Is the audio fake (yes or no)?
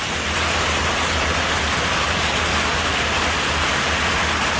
yes